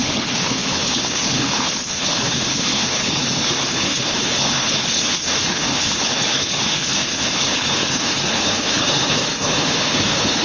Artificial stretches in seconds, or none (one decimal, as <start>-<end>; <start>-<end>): 0.0-10.4